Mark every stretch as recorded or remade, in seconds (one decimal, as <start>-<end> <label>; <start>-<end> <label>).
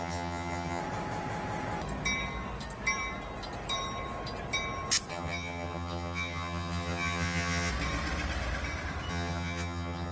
0.0-0.8 remade; 0.8-5.1 recorded; 5.1-7.7 remade; 7.7-9.1 recorded; 9.1-10.1 remade